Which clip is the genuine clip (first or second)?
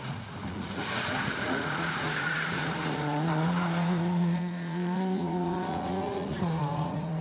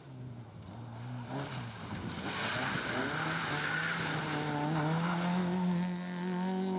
second